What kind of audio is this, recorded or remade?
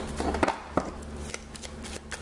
recorded